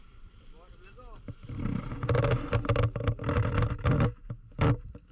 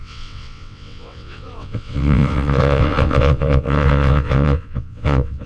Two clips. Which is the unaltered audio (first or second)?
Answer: first